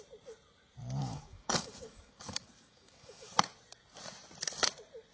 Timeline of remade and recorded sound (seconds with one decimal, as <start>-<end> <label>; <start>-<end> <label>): 0.0-1.0 recorded; 1.0-3.3 remade; 3.3-5.1 recorded